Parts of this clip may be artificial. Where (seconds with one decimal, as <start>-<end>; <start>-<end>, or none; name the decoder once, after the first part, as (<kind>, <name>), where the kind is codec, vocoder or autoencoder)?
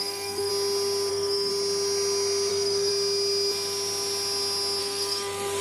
0.0-0.5 (codec, SNAC); 1.1-1.5; 2.5-2.9; 4.8-5.6